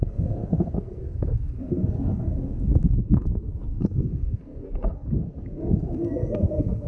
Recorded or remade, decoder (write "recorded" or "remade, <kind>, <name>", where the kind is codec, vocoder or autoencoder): remade, codec, SNAC